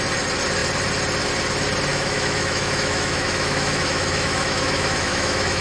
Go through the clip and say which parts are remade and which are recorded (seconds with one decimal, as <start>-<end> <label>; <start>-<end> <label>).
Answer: 0.0-1.9 recorded; 1.9-5.6 remade